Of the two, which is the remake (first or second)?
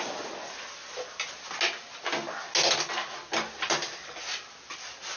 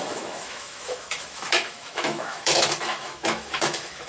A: second